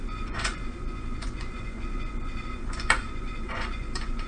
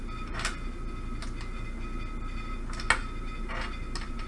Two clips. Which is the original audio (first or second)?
second